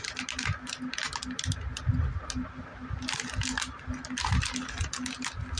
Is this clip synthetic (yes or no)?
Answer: no